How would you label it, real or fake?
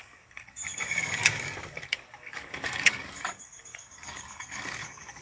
fake